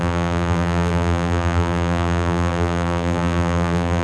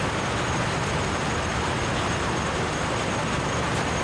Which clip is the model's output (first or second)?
first